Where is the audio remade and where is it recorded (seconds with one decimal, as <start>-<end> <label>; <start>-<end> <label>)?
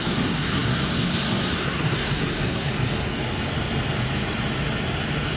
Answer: 0.0-2.7 remade; 2.7-5.4 recorded